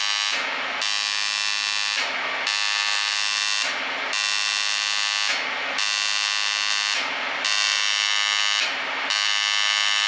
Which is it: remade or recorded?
recorded